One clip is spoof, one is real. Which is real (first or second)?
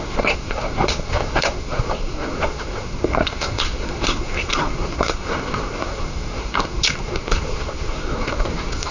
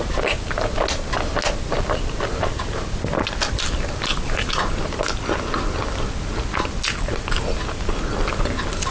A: second